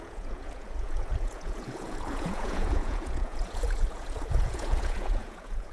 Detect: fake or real fake